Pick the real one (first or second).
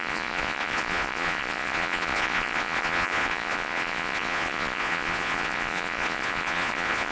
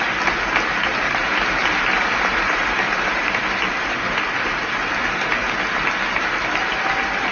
second